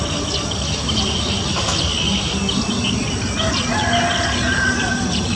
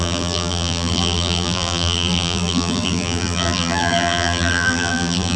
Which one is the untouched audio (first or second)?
first